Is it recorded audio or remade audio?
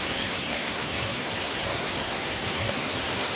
remade